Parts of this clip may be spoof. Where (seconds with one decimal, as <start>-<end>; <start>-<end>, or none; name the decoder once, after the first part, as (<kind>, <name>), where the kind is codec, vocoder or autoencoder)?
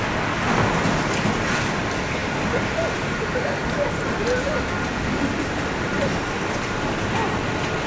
none